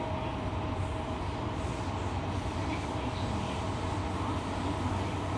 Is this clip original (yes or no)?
yes